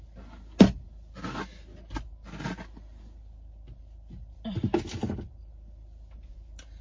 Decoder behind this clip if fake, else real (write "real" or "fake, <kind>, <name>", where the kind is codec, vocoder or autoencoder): real